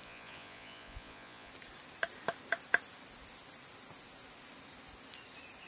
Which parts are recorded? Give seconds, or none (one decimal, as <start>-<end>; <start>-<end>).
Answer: 1.5-5.7